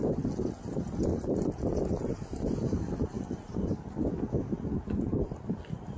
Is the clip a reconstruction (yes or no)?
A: no